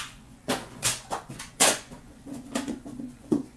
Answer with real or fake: fake